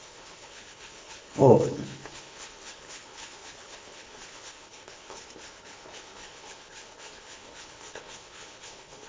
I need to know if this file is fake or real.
fake